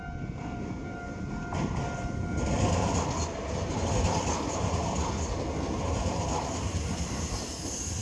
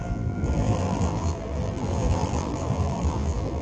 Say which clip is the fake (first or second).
second